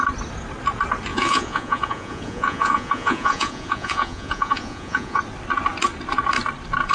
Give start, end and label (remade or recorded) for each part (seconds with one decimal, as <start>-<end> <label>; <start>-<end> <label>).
0.0-1.1 recorded; 1.1-5.2 remade; 5.2-6.9 recorded